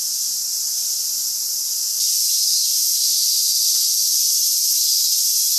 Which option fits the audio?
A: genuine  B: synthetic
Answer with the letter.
A